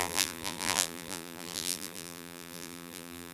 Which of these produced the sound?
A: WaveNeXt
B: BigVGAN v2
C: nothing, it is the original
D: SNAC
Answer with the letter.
B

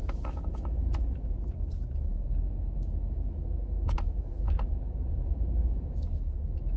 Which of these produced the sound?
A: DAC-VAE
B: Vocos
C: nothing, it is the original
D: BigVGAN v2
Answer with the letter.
A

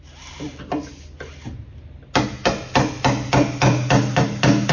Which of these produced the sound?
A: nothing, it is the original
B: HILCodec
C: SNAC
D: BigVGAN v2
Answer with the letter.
A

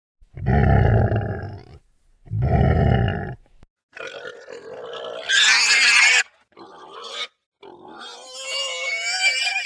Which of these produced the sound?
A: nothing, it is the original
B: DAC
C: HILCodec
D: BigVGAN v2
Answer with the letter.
A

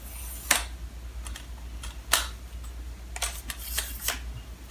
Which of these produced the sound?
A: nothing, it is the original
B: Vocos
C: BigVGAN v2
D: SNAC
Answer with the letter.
A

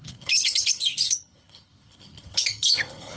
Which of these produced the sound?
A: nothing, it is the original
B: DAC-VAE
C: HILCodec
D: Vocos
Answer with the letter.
C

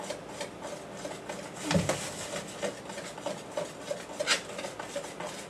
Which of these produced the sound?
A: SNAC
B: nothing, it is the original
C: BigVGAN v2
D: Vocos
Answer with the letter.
B